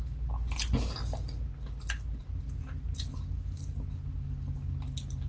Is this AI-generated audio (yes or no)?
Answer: no